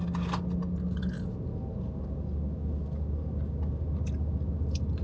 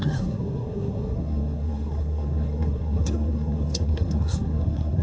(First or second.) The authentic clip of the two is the first